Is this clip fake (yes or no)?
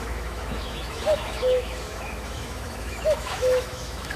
yes